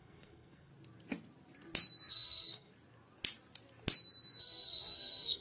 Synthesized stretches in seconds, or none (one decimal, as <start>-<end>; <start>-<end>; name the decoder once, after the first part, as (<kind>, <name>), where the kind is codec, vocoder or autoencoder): 0.0-0.7 (codec, SNAC); 2.1-2.7; 4.4-5.4

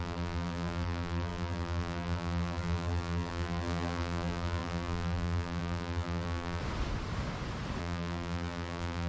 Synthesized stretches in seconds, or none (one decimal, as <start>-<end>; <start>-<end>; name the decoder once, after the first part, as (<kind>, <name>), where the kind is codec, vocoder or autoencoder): 0.0-6.6 (vocoder, BigVGAN v2); 7.8-9.1

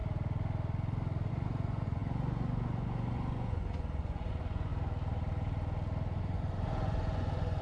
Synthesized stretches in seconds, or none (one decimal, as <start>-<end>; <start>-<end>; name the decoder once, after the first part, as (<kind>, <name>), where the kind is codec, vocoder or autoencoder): 1.3-4.7 (vocoder, Vocos); 6.2-7.6

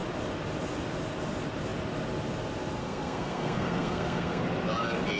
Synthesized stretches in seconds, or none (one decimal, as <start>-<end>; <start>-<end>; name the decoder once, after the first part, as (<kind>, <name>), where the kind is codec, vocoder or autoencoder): 2.8-4.4 (codec, SNAC)

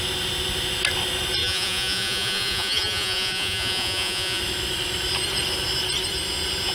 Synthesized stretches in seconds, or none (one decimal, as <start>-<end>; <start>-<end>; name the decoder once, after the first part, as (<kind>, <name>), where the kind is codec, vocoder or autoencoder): 1.4-4.4 (vocoder, Vocos)

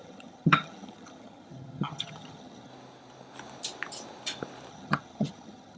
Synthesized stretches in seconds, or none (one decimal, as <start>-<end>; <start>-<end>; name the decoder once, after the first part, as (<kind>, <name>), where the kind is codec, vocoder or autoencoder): 0.0-2.7 (vocoder, HiFi-GAN); 4.7-5.8

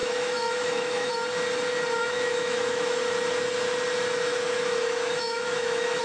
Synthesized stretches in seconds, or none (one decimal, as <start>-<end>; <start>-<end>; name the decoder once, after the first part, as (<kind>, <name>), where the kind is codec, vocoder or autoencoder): 0.0-1.1 (autoencoder, DAC-VAE); 2.0-3.0; 4.3-6.0